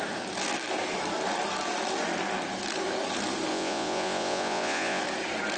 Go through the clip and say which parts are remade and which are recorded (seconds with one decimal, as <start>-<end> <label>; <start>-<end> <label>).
0.0-3.5 recorded; 3.5-5.0 remade; 5.0-5.6 recorded